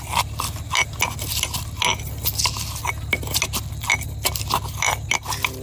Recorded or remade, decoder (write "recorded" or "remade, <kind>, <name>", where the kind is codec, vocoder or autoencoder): recorded